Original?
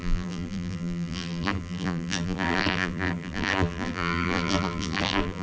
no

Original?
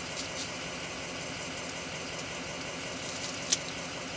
yes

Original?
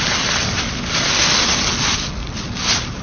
no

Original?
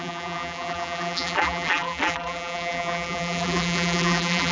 no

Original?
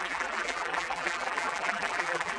no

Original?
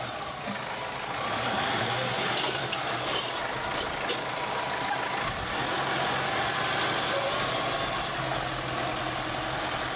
yes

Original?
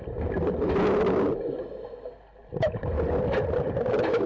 yes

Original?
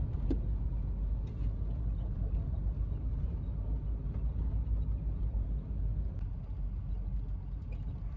yes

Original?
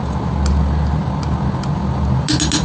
yes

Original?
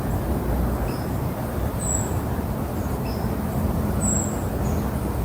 yes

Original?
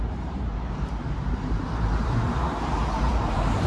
no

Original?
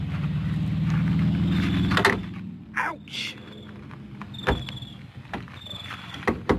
yes